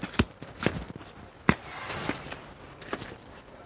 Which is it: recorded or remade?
recorded